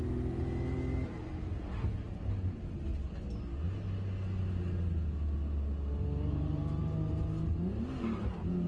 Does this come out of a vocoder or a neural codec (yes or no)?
no